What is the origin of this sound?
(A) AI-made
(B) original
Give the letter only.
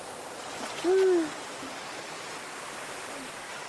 B